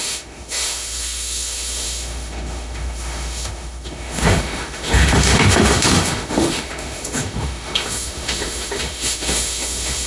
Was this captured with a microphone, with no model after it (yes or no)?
no